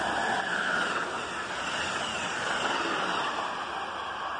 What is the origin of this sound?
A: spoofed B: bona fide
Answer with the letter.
B